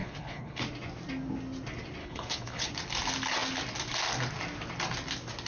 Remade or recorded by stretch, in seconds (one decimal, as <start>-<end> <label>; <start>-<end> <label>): 0.0-0.6 remade; 0.6-2.0 recorded; 2.0-2.7 remade; 2.7-5.5 recorded